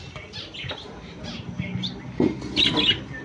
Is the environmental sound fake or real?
real